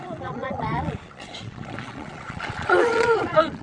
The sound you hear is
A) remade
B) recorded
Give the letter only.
A